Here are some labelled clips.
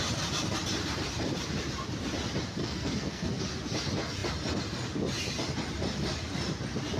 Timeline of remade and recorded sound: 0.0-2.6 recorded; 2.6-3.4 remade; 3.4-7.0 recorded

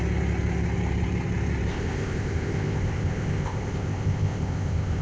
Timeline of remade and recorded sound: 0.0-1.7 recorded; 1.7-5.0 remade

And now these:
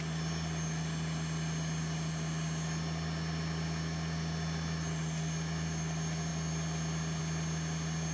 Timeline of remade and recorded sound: 0.0-8.1 recorded